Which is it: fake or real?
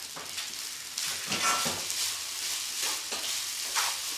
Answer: real